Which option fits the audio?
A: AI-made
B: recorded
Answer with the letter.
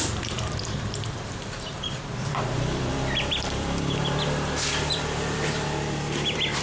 A